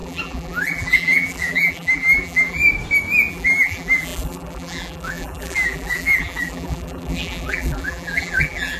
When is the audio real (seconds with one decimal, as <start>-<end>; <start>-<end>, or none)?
2.6-3.3